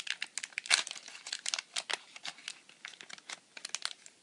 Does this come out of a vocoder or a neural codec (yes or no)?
no